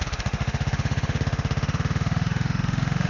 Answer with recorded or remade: remade